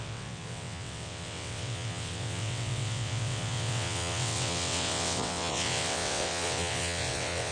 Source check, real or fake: fake